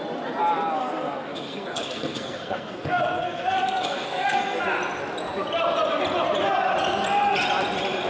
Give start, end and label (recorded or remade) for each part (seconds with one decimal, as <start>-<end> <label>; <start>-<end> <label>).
0.0-0.8 recorded; 0.8-4.6 remade; 4.6-8.1 recorded